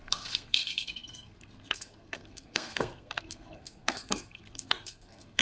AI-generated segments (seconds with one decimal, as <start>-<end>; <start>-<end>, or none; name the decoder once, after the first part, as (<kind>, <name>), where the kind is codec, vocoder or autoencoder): 0.0-5.4 (codec, SNAC)